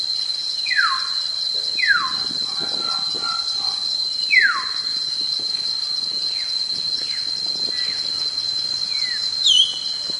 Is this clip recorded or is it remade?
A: recorded